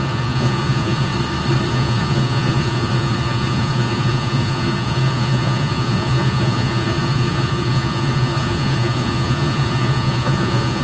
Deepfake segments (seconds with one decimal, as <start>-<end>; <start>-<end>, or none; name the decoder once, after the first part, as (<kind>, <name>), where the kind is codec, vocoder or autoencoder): 0.0-1.1 (vocoder, Vocos); 1.7-10.8